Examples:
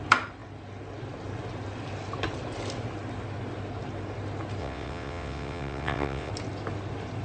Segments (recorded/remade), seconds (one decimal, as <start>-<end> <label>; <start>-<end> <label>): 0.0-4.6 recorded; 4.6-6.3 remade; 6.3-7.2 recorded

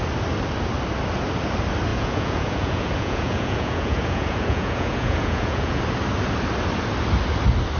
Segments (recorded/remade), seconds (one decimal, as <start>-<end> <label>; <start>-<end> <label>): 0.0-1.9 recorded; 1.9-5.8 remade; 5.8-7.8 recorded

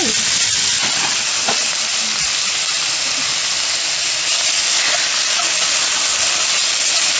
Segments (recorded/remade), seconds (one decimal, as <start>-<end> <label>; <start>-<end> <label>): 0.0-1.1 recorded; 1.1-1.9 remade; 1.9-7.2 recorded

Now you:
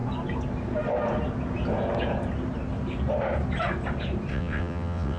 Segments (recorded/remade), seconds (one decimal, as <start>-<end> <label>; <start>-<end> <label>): 0.0-4.3 recorded; 4.3-5.2 remade

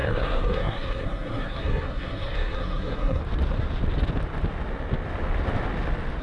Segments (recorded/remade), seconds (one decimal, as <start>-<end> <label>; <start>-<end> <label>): 0.0-3.2 remade; 3.2-6.2 recorded

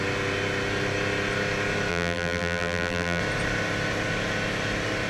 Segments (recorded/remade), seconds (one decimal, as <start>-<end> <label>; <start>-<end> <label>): 0.0-1.9 recorded; 1.9-3.2 remade; 3.2-5.1 recorded